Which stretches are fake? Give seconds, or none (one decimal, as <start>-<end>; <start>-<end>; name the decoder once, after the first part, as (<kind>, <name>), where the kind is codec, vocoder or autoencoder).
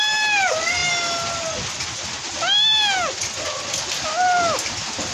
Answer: none